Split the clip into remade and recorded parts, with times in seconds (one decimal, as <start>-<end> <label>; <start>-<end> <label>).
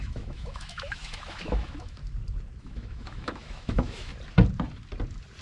0.0-2.0 remade; 2.0-2.6 recorded; 2.6-4.1 remade; 4.1-5.4 recorded